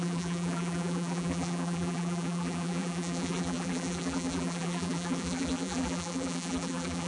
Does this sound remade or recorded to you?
remade